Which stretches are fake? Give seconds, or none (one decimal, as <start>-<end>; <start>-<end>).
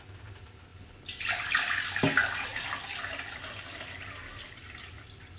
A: none